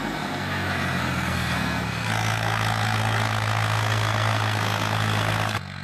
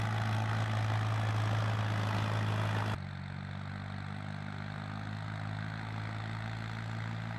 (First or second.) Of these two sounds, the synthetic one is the first